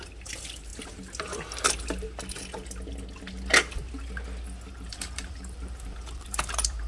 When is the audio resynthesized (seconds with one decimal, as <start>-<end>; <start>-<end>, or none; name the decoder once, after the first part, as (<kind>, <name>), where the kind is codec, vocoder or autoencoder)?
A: 0.0-0.7 (vocoder, BigVGAN v2); 4.7-6.9